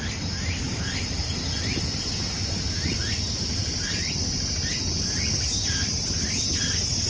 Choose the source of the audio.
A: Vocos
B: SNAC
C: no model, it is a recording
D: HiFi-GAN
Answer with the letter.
C